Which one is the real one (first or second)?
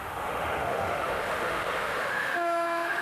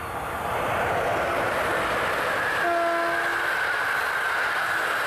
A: second